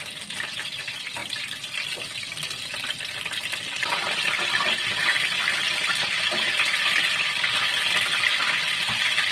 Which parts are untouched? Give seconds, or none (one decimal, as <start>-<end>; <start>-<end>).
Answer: 0.0-9.3